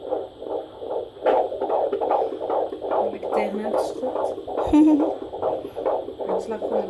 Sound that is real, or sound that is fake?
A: real